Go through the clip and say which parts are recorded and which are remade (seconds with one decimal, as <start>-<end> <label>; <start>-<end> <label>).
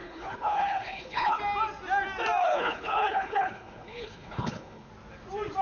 0.0-1.4 remade; 1.4-2.4 recorded; 2.4-4.9 remade; 4.9-5.6 recorded